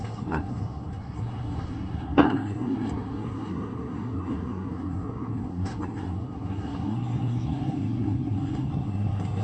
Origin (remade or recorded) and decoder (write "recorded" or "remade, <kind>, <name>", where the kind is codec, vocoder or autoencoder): remade, codec, SNAC